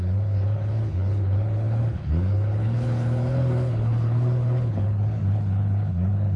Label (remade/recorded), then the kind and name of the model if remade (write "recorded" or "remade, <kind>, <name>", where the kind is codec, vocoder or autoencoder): remade, codec, HILCodec